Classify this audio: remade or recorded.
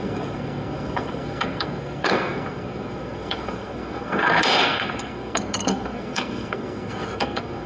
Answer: remade